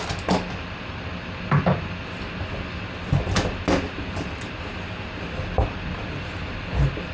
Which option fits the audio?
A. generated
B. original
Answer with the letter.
B